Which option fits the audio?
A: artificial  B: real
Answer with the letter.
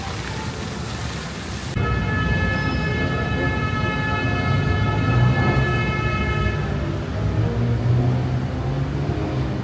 B